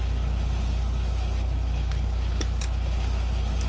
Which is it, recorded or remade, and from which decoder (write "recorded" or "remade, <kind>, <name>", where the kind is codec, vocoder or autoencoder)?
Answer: recorded